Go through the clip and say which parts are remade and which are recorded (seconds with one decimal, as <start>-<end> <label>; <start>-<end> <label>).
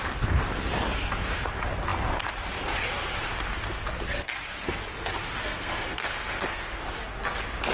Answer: 0.0-5.4 recorded; 5.4-6.8 remade; 6.8-7.7 recorded